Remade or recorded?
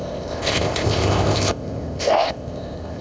remade